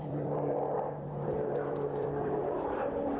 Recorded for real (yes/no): no